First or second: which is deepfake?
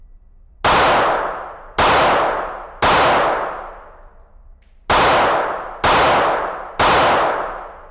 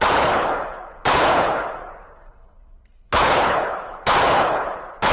second